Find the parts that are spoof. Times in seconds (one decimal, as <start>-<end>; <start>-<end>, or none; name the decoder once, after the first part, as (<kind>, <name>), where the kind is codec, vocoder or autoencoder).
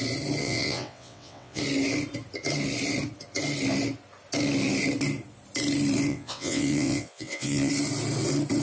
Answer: 0.4-1.6 (vocoder, WaveNeXt); 6.1-7.7